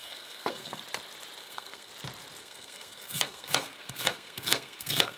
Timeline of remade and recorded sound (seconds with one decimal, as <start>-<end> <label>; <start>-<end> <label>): 0.0-0.8 remade; 0.8-1.4 recorded; 1.4-1.9 remade; 1.9-2.4 recorded; 2.4-5.2 remade